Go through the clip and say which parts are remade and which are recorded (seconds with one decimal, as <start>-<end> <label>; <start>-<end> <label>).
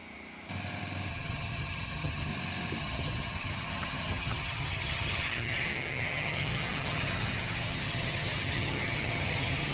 0.0-1.1 recorded; 1.1-2.3 remade; 2.3-2.8 recorded; 2.8-9.7 remade